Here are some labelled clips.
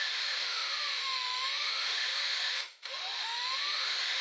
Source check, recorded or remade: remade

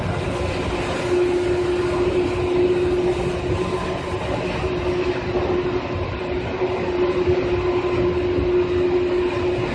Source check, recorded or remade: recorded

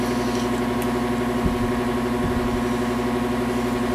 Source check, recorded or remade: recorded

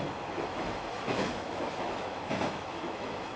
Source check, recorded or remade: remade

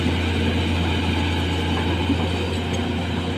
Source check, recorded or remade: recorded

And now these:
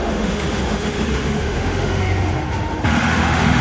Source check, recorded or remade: remade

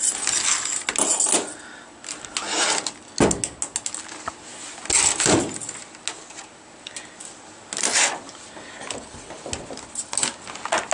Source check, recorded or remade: recorded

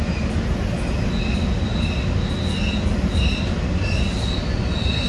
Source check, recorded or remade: recorded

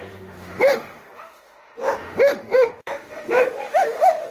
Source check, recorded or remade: remade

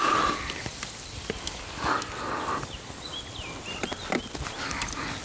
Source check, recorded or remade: recorded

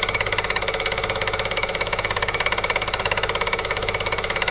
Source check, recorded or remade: remade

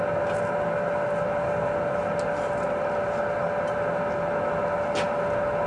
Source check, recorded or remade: recorded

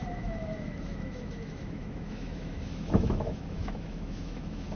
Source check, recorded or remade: remade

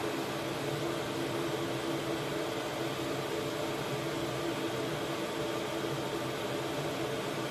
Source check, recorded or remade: recorded